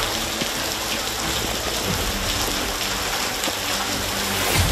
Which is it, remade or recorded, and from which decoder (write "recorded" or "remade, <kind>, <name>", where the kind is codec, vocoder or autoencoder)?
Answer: recorded